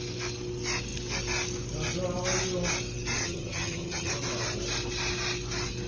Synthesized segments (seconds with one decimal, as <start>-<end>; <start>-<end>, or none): 3.2-4.1